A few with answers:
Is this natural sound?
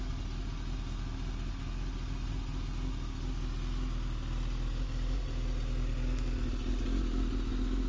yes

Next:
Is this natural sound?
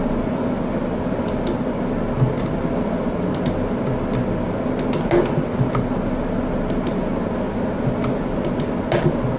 yes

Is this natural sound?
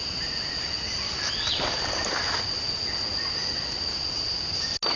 yes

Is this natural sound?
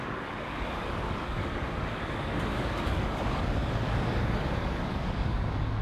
no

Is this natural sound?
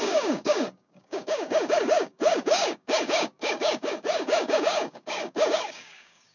no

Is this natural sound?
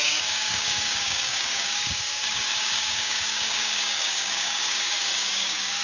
no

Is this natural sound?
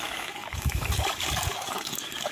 no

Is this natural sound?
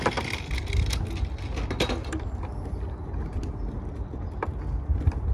yes